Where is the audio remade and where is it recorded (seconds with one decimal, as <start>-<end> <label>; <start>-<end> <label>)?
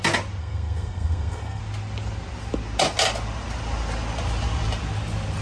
0.0-0.4 recorded; 0.4-1.6 remade; 1.6-5.4 recorded